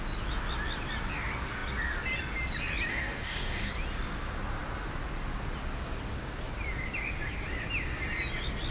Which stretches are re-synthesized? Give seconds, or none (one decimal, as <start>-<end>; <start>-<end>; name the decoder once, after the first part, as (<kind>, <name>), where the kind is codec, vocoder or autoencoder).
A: 2.9-3.7 (codec, DAC)